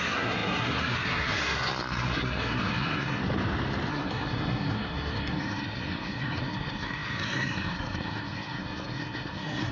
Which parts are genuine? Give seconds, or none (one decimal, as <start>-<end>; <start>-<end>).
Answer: 3.2-3.9